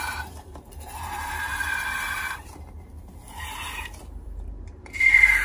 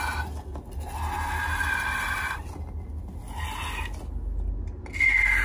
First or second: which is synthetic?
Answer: first